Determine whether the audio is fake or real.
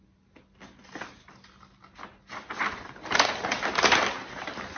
real